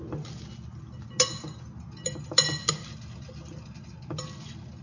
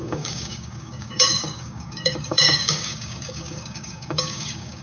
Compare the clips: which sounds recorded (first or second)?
first